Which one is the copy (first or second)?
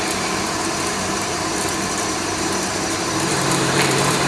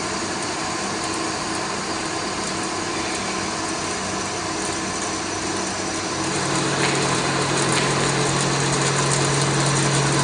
first